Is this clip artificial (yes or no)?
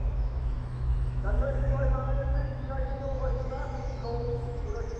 yes